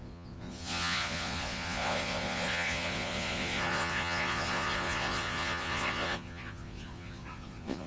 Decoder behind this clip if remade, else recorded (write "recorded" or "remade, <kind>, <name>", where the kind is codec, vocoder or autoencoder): remade, vocoder, Vocos